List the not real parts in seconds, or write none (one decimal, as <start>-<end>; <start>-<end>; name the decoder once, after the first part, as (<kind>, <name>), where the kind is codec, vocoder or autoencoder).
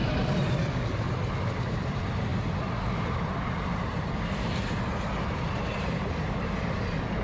0.0-1.3 (vocoder, BigVGAN v2)